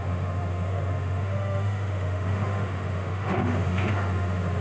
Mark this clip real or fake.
fake